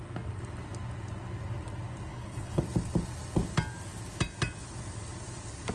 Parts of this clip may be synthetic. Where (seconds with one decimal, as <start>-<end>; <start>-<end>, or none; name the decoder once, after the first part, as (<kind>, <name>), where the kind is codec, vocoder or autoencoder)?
2.1-2.6 (codec, HILCodec)